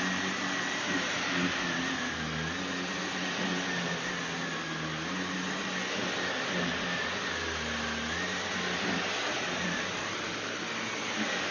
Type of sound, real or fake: real